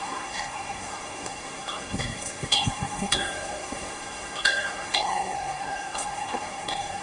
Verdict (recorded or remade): remade